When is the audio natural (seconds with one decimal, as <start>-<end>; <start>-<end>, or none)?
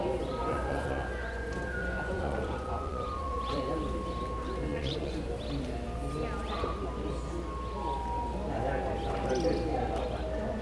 0.0-0.4; 3.6-4.7; 5.3-10.6